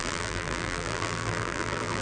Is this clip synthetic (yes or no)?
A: yes